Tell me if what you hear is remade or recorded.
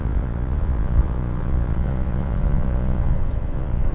remade